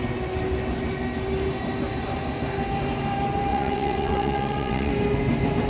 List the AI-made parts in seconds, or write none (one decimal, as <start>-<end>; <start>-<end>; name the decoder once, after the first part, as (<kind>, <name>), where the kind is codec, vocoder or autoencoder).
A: 3.5-4.9 (vocoder, WaveNeXt)